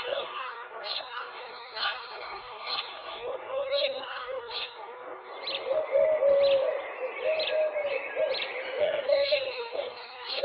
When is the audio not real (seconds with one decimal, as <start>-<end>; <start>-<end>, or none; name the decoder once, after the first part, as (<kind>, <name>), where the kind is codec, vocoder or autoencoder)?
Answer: 0.0-5.3 (codec, SNAC); 8.8-10.4